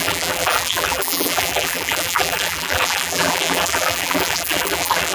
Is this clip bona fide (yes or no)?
no